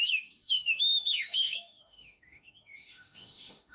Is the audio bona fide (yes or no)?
no